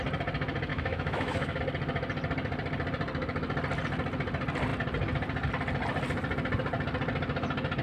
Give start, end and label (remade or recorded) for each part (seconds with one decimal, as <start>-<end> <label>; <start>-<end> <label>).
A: 0.0-0.7 recorded; 0.7-1.6 remade; 1.6-7.8 recorded